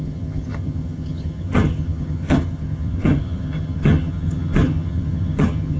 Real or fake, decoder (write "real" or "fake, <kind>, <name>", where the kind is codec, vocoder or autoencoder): fake, vocoder, HiFi-GAN